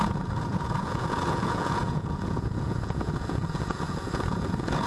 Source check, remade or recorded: remade